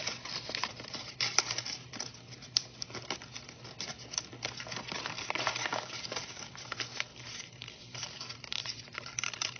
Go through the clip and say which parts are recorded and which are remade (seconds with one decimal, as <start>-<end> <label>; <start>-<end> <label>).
0.0-2.7 remade; 2.7-4.9 recorded; 4.9-9.6 remade